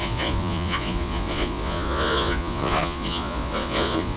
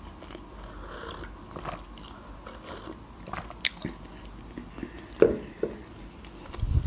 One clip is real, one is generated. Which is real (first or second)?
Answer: second